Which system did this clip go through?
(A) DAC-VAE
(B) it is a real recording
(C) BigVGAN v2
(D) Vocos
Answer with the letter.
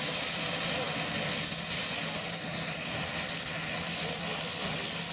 B